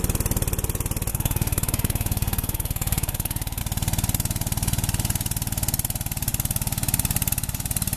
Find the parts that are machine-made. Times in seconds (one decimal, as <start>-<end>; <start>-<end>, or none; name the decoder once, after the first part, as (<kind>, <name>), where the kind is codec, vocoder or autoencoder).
1.1-3.6 (codec, SNAC)